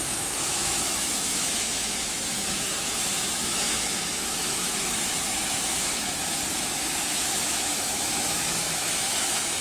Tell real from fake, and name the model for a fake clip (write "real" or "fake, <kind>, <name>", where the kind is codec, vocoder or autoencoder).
fake, autoencoder, DAC-VAE